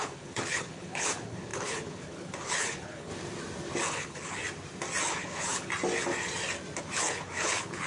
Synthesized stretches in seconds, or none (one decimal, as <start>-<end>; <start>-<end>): 0.0-3.1; 3.8-4.4; 5.1-5.7; 6.8-7.9